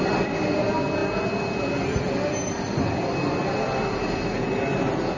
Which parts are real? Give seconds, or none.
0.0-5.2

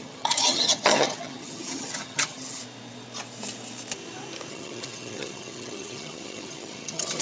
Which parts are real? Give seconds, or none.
2.6-4.5

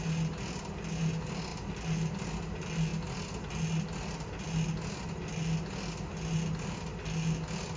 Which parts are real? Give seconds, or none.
0.0-7.8

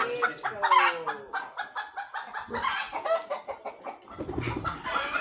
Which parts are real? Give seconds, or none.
0.0-5.2

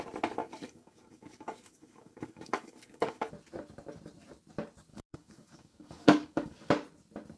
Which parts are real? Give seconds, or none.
0.0-0.4; 3.3-4.9; 6.7-7.4

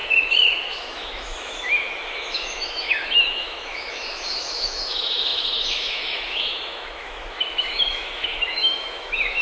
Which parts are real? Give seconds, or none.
none

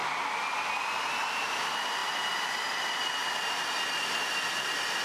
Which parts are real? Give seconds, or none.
0.0-5.0